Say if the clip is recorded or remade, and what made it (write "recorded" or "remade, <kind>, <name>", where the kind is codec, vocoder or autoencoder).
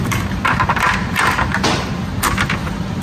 recorded